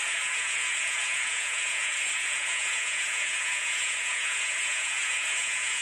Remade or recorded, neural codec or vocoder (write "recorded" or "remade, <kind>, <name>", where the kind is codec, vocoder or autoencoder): remade, vocoder, Vocos